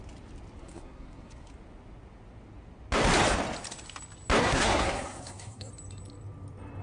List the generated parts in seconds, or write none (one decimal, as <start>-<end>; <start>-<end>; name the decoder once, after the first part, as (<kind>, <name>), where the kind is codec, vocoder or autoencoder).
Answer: 0.6-1.5 (codec, SNAC); 4.4-5.7